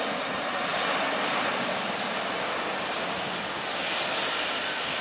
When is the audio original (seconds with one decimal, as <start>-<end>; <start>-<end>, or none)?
0.0-5.0